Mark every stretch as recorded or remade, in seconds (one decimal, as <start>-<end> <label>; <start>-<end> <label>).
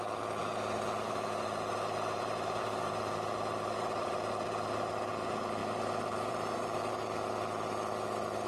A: 0.0-0.4 recorded; 0.4-4.9 remade; 4.9-5.6 recorded; 5.6-6.9 remade; 6.9-8.5 recorded